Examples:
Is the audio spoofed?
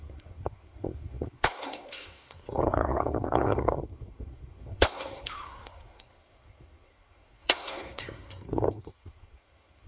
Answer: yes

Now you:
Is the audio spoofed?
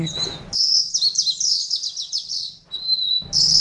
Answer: no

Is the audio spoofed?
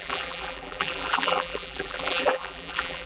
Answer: yes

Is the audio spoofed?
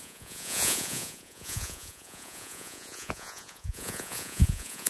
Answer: yes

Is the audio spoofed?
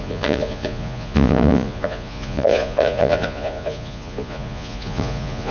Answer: yes